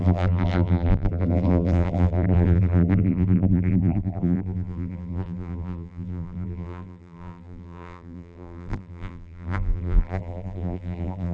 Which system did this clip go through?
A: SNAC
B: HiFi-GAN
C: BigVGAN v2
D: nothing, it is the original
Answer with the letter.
C